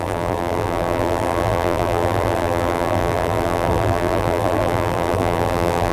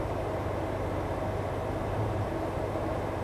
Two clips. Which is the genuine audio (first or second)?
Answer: second